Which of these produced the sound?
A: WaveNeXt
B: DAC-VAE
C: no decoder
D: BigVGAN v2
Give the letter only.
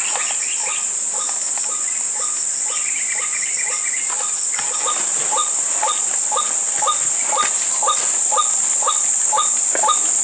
C